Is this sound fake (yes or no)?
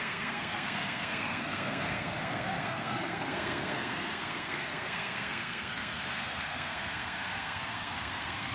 yes